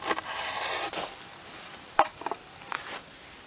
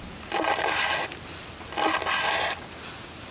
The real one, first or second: second